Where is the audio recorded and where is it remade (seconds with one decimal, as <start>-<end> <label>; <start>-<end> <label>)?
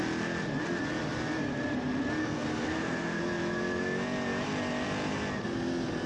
0.0-2.2 recorded; 2.2-3.2 remade; 3.2-6.1 recorded